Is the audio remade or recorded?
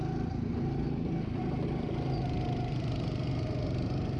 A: recorded